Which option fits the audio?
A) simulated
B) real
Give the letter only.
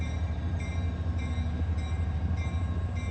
B